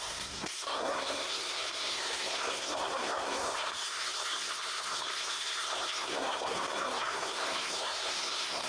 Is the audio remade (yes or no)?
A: yes